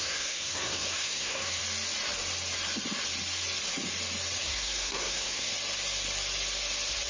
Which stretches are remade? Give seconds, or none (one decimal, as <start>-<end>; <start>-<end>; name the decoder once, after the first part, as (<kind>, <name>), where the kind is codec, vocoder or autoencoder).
0.0-1.6 (codec, SNAC); 4.4-5.5